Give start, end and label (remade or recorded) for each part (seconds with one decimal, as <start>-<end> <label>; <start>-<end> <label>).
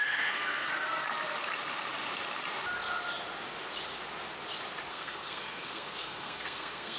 0.0-0.7 remade; 0.7-4.9 recorded; 4.9-7.0 remade